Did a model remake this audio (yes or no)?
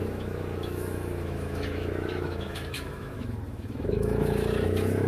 yes